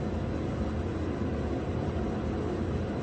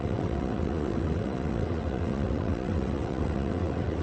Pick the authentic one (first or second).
first